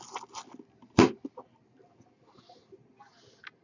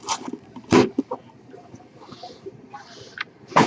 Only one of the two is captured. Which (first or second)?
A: first